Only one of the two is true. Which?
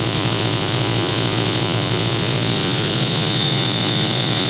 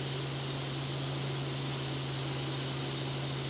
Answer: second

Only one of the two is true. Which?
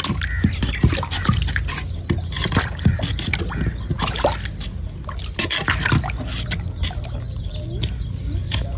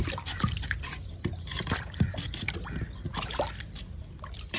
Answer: first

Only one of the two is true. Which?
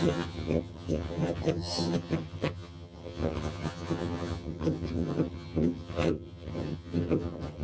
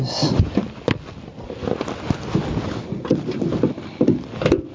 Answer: second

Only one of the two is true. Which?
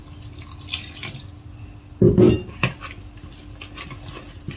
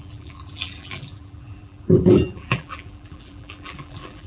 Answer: first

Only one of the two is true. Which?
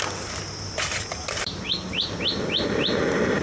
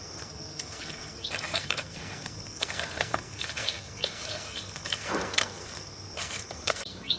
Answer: first